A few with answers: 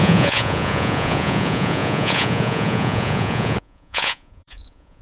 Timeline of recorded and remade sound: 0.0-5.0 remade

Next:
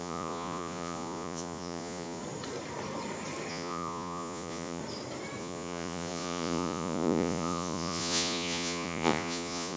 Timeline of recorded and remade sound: 0.0-2.2 remade; 2.2-3.5 recorded; 3.5-4.8 remade; 4.8-5.4 recorded; 5.4-9.8 remade

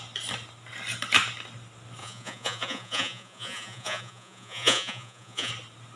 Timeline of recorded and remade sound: 0.0-2.0 recorded; 2.0-5.5 remade; 5.5-6.0 recorded